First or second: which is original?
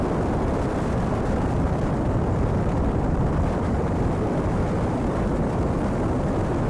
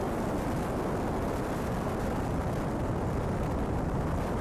second